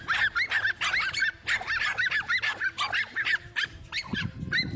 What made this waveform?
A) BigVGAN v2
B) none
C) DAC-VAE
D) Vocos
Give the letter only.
B